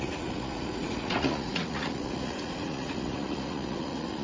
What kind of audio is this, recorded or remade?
remade